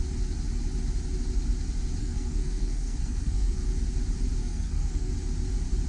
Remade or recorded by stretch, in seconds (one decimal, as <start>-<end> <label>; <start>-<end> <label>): 0.0-2.0 recorded; 2.0-3.6 remade; 3.6-4.4 recorded; 4.4-5.1 remade; 5.1-5.9 recorded